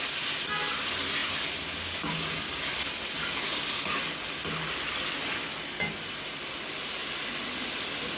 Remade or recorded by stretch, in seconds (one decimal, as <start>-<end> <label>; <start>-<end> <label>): 0.0-8.2 recorded